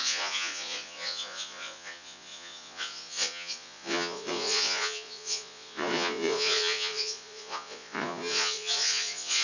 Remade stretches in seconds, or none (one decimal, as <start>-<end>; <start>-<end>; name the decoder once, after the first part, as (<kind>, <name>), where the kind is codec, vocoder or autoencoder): 0.0-9.4 (vocoder, Vocos)